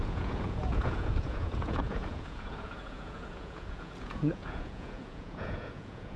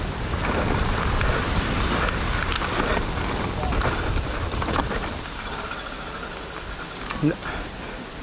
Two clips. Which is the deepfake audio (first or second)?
first